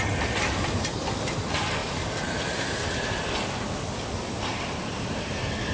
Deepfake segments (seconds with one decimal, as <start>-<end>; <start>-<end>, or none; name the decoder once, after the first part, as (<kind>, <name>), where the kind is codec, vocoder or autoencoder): none